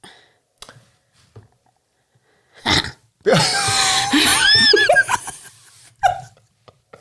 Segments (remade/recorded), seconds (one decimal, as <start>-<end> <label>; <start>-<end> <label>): 0.0-7.0 recorded